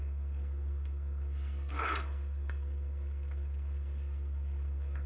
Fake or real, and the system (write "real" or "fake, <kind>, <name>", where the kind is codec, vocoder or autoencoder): fake, codec, SNAC